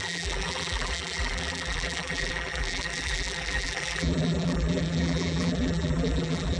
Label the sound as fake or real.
fake